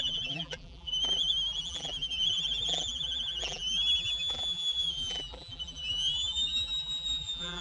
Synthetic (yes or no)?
yes